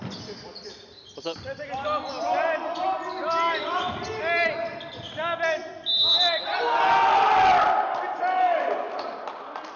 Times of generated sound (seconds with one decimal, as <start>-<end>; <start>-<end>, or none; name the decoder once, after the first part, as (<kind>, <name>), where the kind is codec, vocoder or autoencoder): none